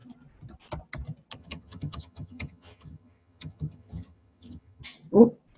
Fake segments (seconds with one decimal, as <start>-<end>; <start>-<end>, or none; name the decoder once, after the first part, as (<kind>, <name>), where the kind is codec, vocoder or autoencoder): 1.4-4.8 (vocoder, HiFi-GAN)